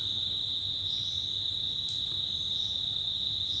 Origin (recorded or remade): recorded